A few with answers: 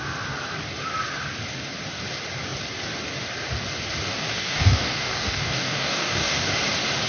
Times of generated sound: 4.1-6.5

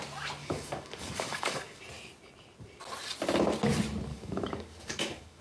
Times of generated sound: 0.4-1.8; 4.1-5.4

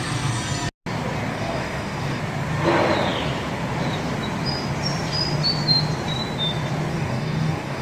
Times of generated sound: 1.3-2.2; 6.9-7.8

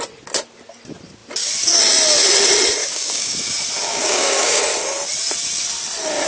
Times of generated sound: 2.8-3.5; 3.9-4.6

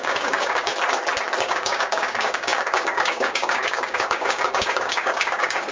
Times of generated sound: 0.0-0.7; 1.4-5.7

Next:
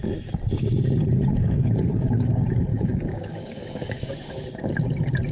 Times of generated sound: 1.4-2.3; 2.7-4.1